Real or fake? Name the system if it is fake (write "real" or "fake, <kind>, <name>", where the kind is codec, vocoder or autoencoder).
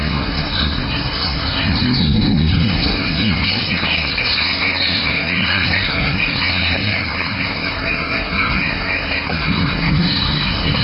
fake, codec, SNAC